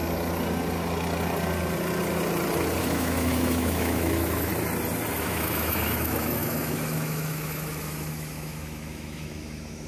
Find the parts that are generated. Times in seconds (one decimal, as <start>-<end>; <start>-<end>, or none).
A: 2.8-4.5; 5.2-9.9